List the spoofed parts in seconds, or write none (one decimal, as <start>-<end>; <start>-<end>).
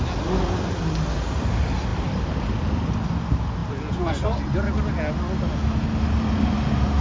none